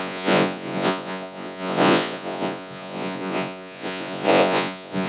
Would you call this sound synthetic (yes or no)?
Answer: yes